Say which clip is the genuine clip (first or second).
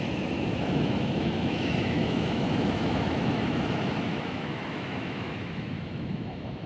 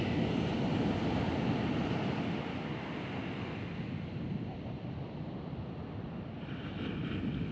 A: second